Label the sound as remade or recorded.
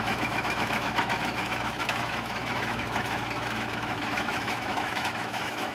remade